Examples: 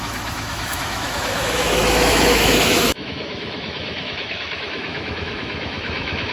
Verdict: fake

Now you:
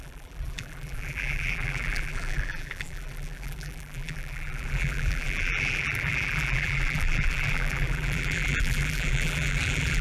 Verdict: fake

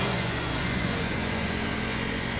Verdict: fake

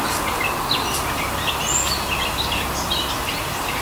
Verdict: real